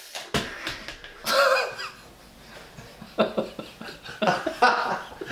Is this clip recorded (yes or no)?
yes